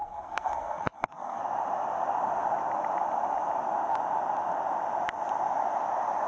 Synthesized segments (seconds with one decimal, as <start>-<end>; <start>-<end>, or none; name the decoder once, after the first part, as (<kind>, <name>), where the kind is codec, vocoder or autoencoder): 0.0-1.4 (codec, SNAC)